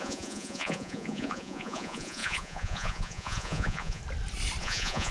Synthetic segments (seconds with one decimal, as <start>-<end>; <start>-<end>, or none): 0.0-4.0; 4.6-5.1